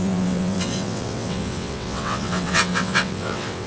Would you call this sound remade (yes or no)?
yes